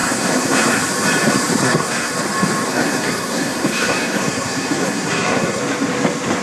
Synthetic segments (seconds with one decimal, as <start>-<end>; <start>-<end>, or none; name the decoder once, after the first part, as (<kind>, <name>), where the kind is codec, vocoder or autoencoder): 0.0-0.8 (codec, SNAC); 1.6-2.1; 2.7-5.6